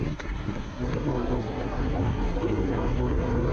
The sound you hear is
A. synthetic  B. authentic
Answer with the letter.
A